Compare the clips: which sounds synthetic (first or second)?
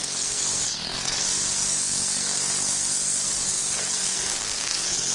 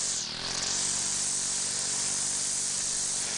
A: first